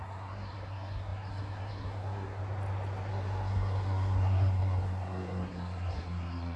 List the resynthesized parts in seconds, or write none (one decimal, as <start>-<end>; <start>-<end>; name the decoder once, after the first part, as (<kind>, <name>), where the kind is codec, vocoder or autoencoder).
0.0-2.4 (codec, SNAC); 3.1-6.6